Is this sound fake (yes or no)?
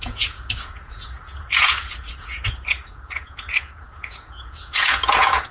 yes